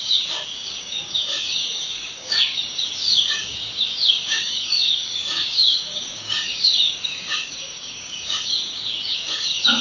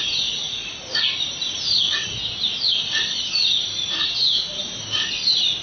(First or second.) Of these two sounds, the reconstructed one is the first